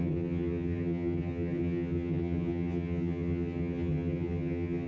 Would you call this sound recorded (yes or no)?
no